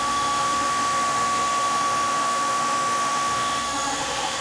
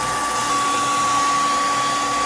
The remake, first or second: first